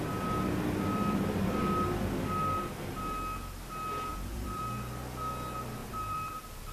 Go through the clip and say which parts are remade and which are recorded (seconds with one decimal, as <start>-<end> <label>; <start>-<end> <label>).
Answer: 0.0-4.1 recorded; 4.1-4.6 remade; 4.6-5.8 recorded; 5.8-6.7 remade